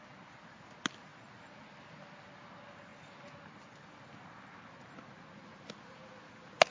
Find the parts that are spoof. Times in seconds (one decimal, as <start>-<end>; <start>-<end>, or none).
none